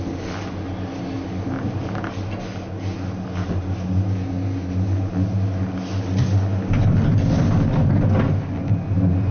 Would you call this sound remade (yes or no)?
no